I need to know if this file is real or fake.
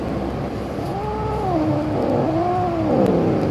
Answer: real